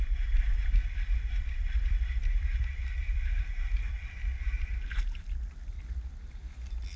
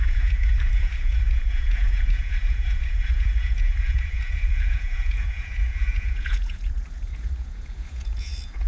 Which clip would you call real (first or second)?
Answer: first